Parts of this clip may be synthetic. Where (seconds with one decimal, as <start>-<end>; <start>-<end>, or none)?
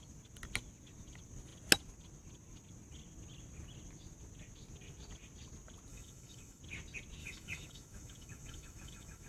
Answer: 5.9-6.6; 7.2-9.3